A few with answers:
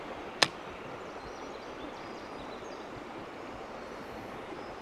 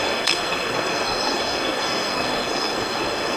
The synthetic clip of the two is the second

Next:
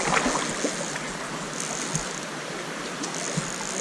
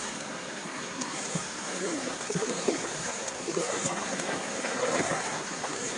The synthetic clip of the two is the second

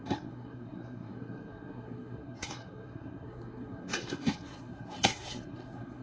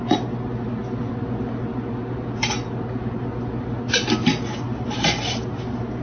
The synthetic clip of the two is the first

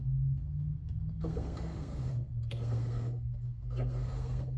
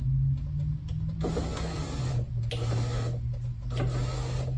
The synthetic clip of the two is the first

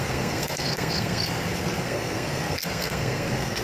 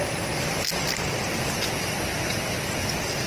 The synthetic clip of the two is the first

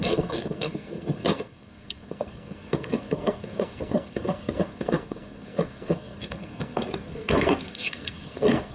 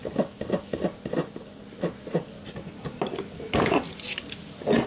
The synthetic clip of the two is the first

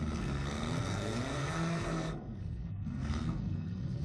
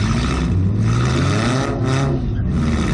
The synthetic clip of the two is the first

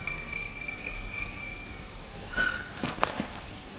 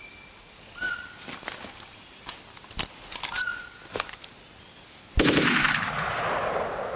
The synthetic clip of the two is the first